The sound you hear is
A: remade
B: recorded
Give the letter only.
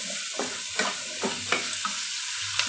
B